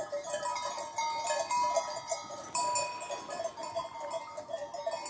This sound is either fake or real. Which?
real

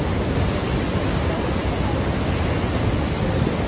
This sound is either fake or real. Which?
real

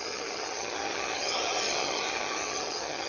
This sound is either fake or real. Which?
fake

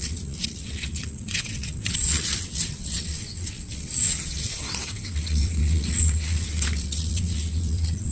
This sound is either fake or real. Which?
fake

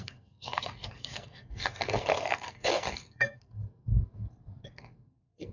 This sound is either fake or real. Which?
fake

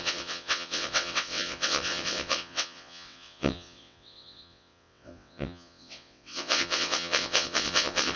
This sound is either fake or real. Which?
fake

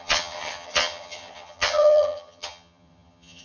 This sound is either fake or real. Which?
fake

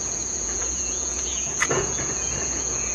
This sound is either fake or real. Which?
fake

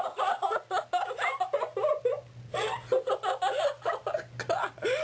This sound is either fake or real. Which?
real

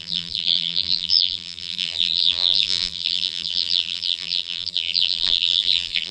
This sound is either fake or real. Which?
fake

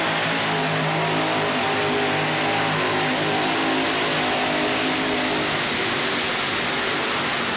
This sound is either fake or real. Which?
real